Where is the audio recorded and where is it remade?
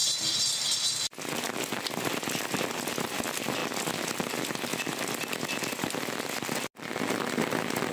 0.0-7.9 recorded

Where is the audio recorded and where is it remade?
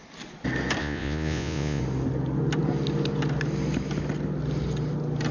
0.0-0.8 recorded; 0.8-1.8 remade; 1.8-5.3 recorded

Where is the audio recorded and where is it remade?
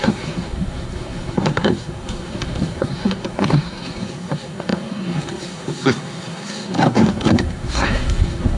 0.0-8.6 remade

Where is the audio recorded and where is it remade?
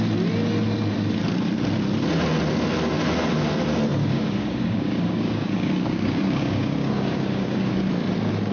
0.0-4.0 recorded; 4.0-7.9 remade; 7.9-8.5 recorded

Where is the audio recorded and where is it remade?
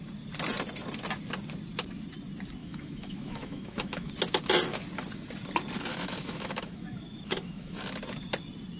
0.0-2.6 recorded; 2.6-4.1 remade; 4.1-5.9 recorded; 5.9-7.8 remade; 7.8-8.8 recorded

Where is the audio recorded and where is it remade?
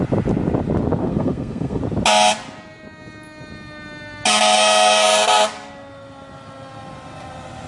0.0-1.0 recorded; 1.0-1.8 remade; 1.8-7.7 recorded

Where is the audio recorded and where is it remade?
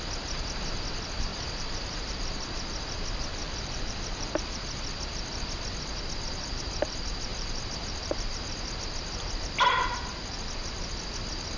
0.0-1.3 recorded; 1.3-2.4 remade; 2.4-3.4 recorded; 3.4-5.8 remade; 5.8-7.3 recorded; 7.3-7.9 remade; 7.9-11.6 recorded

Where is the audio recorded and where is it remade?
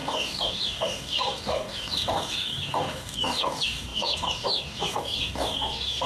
0.0-6.1 remade